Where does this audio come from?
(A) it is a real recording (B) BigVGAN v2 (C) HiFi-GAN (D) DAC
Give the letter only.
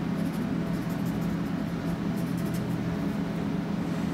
A